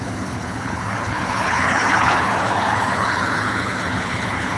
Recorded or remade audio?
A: remade